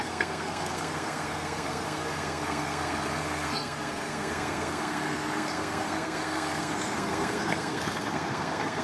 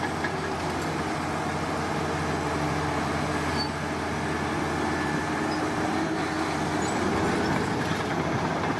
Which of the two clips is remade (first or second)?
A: first